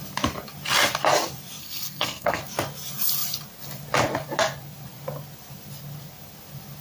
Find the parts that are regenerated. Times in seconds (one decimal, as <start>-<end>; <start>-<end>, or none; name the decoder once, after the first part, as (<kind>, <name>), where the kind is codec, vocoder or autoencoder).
1.6-2.4 (codec, SNAC)

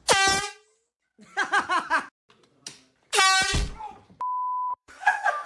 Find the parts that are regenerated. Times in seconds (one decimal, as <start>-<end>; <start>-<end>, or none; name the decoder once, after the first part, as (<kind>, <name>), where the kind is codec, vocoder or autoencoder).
4.7-5.5 (codec, SNAC)